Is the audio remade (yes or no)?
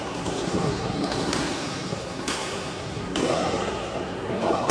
yes